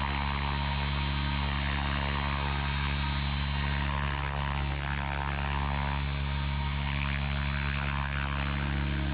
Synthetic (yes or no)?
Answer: no